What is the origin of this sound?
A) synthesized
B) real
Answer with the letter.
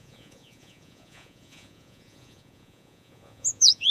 A